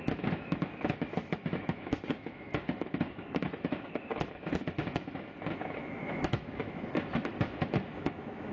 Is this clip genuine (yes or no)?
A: no